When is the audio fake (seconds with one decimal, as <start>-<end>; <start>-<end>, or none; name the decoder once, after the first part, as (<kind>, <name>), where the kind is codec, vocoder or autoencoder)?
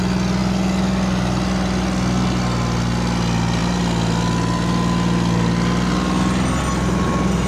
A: none